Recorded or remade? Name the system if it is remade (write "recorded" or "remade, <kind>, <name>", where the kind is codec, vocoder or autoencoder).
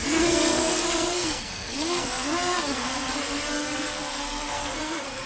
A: remade, codec, SNAC